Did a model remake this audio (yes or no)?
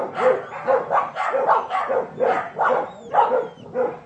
no